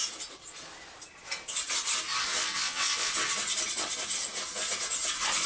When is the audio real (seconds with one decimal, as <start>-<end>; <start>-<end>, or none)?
0.0-2.3; 3.1-5.5